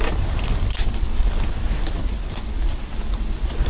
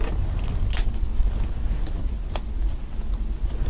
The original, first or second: second